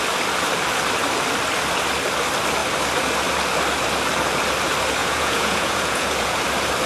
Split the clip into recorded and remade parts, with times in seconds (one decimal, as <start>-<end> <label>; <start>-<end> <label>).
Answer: 0.0-5.0 recorded; 5.0-6.4 remade; 6.4-6.9 recorded